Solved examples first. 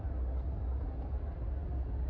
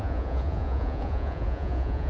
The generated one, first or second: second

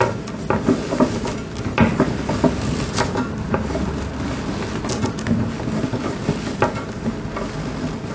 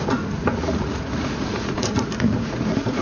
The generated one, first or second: second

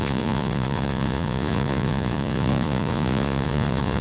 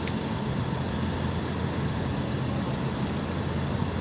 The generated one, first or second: first